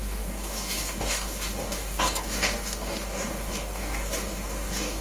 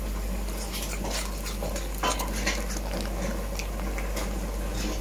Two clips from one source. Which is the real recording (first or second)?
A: second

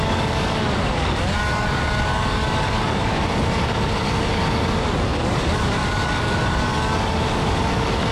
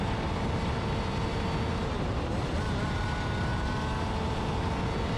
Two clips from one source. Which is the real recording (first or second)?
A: second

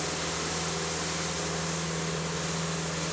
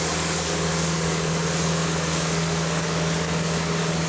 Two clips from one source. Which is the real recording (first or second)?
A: first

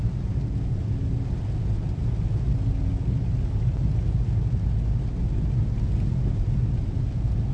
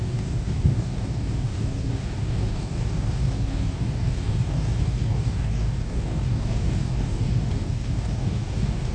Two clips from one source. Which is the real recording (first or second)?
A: first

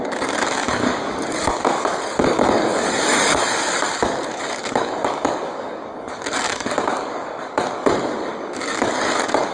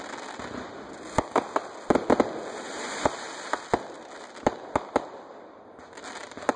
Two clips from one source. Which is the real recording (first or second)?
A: second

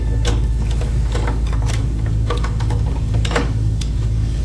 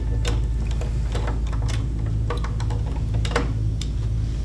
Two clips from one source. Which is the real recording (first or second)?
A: second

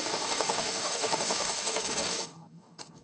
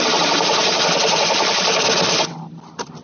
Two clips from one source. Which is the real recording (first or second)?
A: second